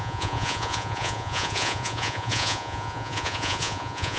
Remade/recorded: remade